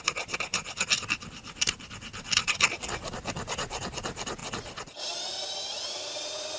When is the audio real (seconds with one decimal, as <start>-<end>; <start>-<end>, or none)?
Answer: 0.0-6.6